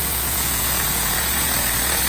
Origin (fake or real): fake